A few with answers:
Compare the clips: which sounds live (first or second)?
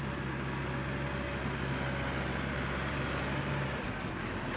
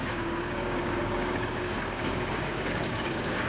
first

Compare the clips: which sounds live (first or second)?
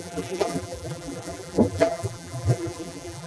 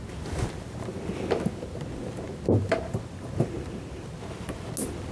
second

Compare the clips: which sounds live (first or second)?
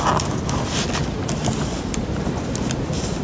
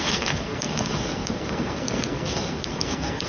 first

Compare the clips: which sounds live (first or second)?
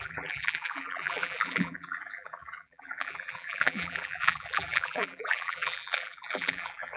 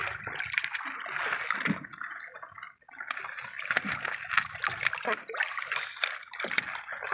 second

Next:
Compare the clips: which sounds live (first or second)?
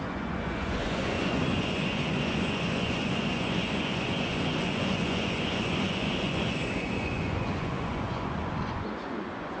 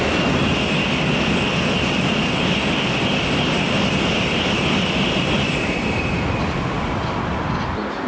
second